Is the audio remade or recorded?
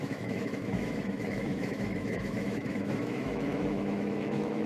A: remade